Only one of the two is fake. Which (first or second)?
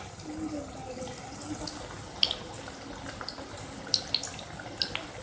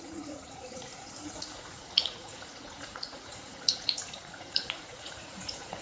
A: second